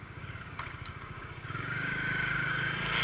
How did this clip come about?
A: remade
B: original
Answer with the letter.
A